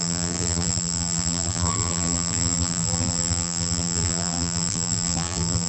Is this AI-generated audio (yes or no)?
yes